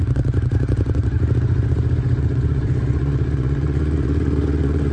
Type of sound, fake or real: fake